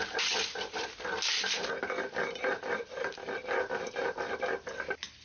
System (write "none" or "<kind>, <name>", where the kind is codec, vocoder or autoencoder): none